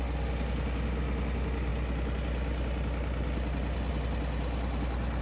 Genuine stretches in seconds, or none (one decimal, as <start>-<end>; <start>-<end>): 0.0-5.2